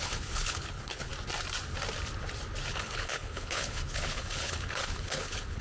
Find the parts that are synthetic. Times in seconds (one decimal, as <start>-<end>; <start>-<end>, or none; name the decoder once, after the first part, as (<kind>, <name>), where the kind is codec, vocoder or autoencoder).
0.0-1.1 (codec, HILCodec); 2.7-5.6